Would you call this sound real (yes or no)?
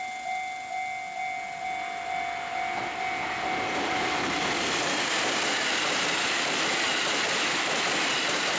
yes